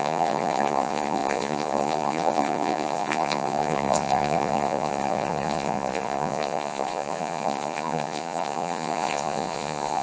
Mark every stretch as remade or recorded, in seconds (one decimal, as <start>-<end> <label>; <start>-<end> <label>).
0.0-10.0 remade